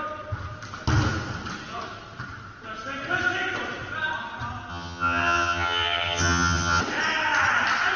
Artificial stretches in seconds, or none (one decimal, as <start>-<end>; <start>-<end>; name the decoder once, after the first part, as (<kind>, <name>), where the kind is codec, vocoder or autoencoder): 4.7-6.8 (vocoder, HiFi-GAN)